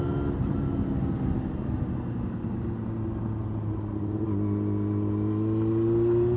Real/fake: real